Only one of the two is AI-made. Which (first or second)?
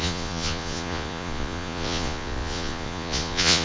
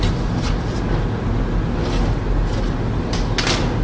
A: first